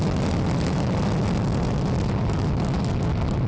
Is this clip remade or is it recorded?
recorded